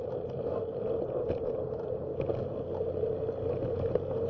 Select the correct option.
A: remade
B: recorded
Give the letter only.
B